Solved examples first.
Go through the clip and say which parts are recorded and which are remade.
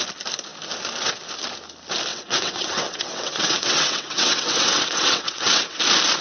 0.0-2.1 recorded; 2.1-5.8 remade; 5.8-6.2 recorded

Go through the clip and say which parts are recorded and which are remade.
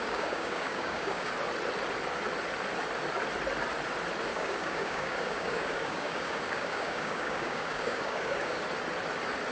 0.0-1.3 remade; 1.3-4.3 recorded; 4.3-8.6 remade; 8.6-9.5 recorded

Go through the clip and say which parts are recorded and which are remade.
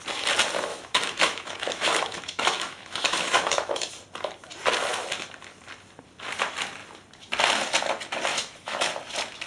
0.0-0.7 recorded; 0.7-3.9 remade; 3.9-8.3 recorded; 8.3-9.0 remade; 9.0-9.5 recorded